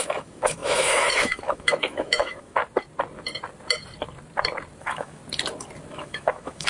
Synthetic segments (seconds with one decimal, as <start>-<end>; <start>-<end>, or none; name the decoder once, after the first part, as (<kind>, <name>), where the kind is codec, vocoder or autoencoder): 0.0-2.6 (autoencoder, DAC-VAE); 4.8-5.2; 5.9-6.7